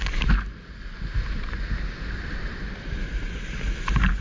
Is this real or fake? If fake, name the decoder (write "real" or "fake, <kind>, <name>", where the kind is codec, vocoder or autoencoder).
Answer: real